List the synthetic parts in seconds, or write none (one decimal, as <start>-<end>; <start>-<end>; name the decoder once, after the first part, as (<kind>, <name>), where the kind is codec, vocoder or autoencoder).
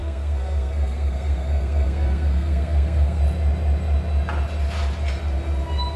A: 0.0-3.2 (codec, SNAC)